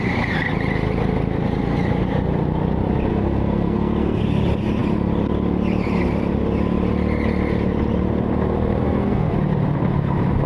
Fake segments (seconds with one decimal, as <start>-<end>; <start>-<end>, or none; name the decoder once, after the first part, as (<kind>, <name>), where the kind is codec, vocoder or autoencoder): 3.1-4.2 (codec, SNAC); 8.8-9.3